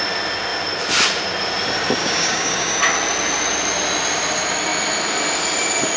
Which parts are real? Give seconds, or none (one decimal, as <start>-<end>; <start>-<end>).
0.0-2.0; 2.8-6.0